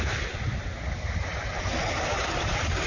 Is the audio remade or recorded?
recorded